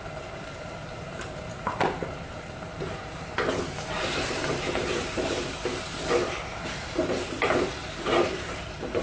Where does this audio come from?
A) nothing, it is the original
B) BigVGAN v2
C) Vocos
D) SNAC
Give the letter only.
B